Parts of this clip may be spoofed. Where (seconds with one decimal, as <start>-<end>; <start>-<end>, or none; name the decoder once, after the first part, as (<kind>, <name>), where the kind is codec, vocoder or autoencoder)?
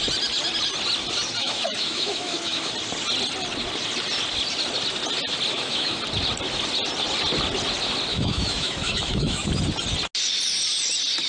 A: 1.4-2.7 (autoencoder, DAC-VAE); 5.5-6.0; 8.1-9.5